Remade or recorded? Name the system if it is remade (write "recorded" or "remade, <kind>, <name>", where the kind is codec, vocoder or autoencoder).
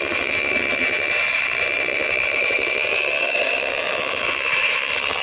remade, vocoder, WaveNeXt